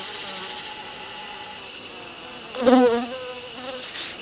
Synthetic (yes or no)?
no